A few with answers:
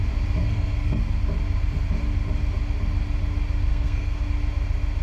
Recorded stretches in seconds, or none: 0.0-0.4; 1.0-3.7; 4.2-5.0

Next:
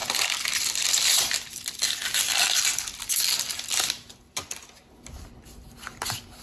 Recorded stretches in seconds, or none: 0.0-6.4

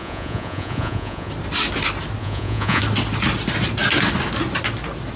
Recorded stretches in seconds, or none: 1.3-2.2; 2.8-5.2

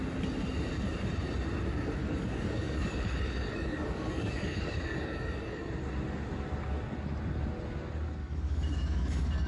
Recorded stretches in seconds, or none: 0.0-2.0; 5.7-8.2

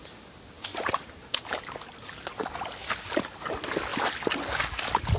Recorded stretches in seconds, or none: 0.0-0.7; 1.8-2.8; 3.5-5.2

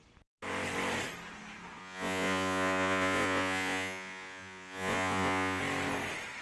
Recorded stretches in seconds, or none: 0.0-1.8; 5.6-6.4

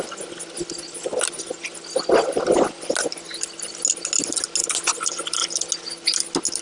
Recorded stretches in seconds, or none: 0.0-6.6